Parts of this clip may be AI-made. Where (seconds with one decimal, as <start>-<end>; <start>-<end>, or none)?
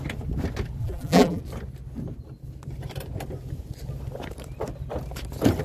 0.8-1.4